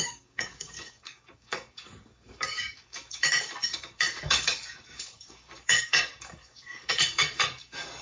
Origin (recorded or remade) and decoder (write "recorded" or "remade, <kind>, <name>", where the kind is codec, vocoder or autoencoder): remade, codec, DAC